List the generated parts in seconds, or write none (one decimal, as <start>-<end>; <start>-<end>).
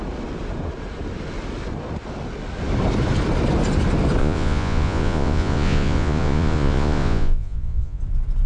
4.2-8.0